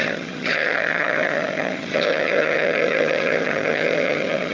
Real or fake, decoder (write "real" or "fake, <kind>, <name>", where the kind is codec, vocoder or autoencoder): fake, vocoder, HiFi-GAN